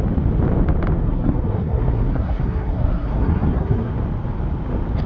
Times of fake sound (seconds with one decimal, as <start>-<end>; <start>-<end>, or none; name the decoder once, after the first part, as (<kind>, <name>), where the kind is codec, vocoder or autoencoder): 1.0-3.9 (codec, SNAC)